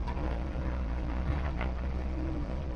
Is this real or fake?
fake